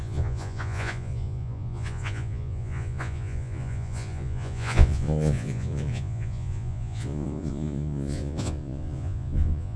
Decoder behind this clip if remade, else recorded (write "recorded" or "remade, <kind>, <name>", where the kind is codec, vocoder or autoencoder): remade, vocoder, Vocos